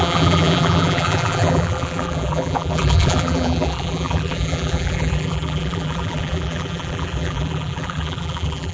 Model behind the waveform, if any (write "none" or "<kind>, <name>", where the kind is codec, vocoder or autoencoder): vocoder, BigVGAN v2